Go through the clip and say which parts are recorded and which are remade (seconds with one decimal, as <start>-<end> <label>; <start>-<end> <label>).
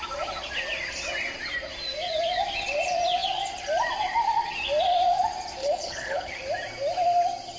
0.0-5.6 recorded; 5.6-6.3 remade; 6.3-7.6 recorded